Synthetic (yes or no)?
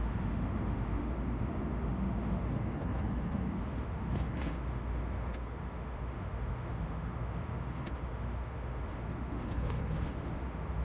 yes